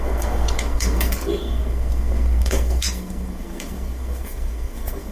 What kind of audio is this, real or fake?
fake